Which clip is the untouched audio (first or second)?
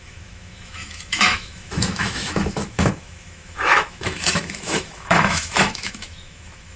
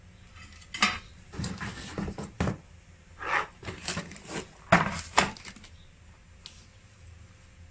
second